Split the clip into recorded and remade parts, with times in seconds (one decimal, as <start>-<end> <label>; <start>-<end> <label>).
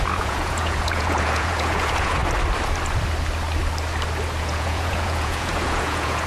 0.0-2.2 remade; 2.2-4.4 recorded; 4.4-6.3 remade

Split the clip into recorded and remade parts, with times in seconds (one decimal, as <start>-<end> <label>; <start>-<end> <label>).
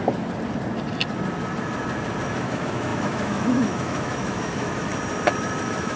0.0-2.3 recorded; 2.3-4.9 remade; 4.9-5.6 recorded; 5.6-6.0 remade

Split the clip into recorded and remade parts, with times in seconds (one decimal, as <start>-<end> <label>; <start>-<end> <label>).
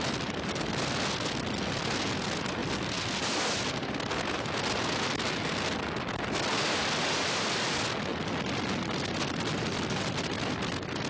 0.0-2.6 recorded; 2.6-3.4 remade; 3.4-11.1 recorded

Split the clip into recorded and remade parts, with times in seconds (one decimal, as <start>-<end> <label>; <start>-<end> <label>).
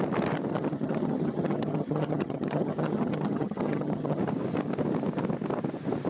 0.0-0.5 recorded; 0.5-4.2 remade; 4.2-6.1 recorded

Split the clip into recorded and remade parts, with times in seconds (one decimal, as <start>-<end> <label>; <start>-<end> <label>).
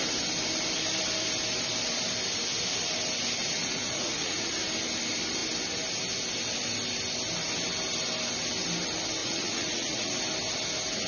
0.0-3.4 recorded; 3.4-4.5 remade; 4.5-9.2 recorded; 9.2-10.2 remade; 10.2-11.1 recorded